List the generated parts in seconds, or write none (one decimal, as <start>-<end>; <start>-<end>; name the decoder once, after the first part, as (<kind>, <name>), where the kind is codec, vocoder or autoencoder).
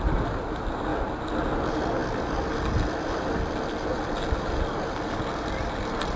none